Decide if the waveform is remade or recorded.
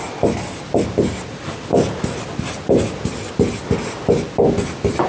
recorded